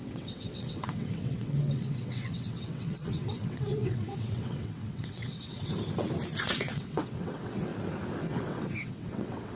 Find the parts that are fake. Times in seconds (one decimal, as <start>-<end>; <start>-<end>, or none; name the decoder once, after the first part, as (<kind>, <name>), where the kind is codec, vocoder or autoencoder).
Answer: 0.0-5.7 (vocoder, WaveNeXt); 6.4-7.7; 8.2-9.6